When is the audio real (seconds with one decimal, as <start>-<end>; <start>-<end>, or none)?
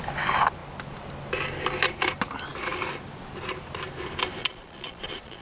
0.0-4.4